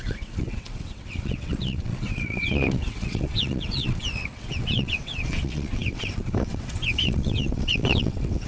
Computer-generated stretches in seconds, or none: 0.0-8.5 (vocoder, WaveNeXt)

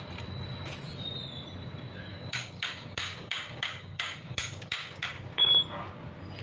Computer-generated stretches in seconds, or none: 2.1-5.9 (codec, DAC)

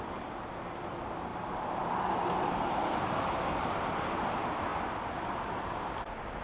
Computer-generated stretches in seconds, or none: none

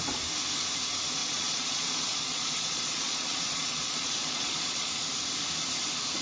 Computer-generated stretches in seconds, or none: 1.2-4.9 (vocoder, Vocos)

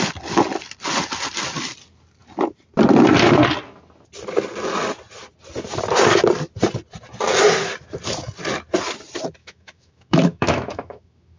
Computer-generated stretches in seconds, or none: 9.4-11.4 (autoencoder, DAC-VAE)

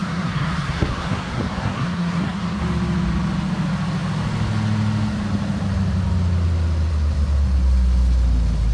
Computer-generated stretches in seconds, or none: 0.0-2.6 (codec, SNAC)